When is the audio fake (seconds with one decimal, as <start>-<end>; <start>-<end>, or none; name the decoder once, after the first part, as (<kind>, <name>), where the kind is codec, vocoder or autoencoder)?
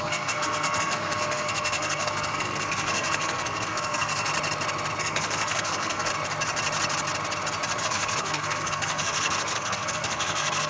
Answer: 0.0-4.3 (codec, SNAC); 5.0-6.1; 7.8-10.7